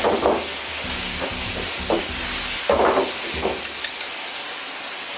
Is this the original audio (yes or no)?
yes